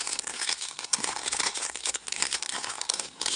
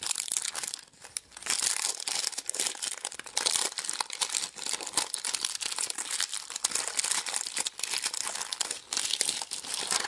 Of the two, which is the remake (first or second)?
first